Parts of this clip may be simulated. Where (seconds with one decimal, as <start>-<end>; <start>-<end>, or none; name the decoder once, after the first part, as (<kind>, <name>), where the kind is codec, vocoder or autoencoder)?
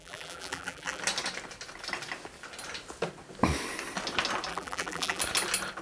0.0-1.0 (vocoder, BigVGAN v2); 4.5-5.2